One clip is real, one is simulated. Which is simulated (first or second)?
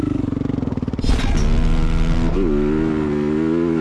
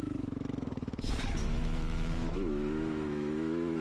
second